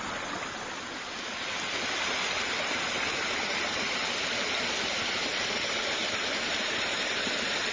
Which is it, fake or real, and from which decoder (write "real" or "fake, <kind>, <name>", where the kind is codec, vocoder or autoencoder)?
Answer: real